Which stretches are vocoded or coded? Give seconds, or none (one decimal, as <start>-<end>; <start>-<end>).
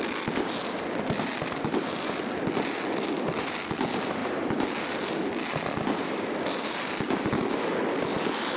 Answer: none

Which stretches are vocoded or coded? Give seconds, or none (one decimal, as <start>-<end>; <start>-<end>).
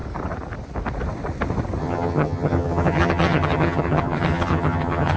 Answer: 1.8-5.2